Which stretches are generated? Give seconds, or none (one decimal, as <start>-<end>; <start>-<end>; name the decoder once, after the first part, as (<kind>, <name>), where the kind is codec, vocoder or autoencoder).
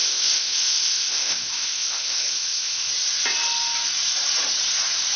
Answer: 0.0-2.9 (codec, ZipCodec)